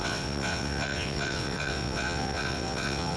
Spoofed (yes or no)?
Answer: yes